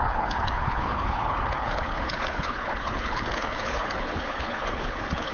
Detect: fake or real fake